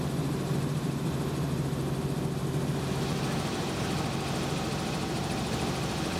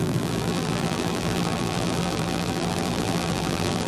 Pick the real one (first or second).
first